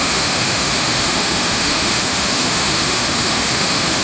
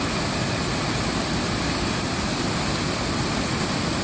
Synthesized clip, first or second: first